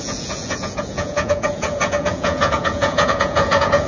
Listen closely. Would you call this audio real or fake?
fake